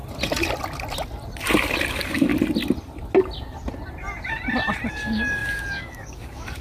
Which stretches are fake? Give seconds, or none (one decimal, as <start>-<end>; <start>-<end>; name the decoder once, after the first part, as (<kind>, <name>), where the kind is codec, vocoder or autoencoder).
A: 1.9-2.3 (codec, DAC); 4.9-6.6